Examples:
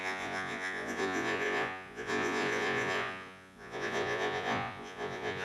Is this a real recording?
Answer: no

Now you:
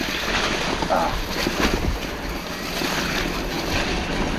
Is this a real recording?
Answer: yes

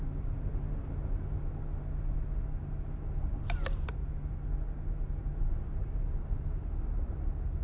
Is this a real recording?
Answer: yes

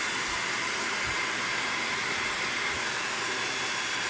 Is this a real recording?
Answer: yes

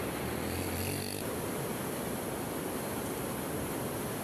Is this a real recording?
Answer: yes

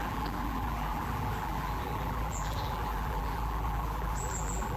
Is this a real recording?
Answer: no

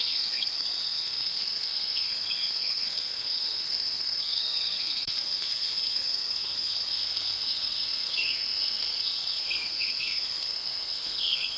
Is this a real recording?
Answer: no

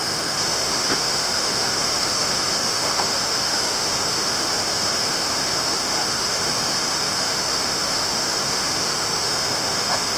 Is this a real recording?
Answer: no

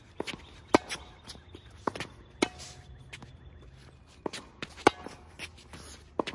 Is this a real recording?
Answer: yes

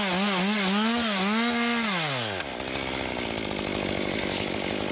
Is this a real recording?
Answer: yes